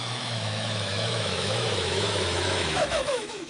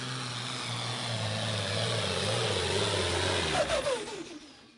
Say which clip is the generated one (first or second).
first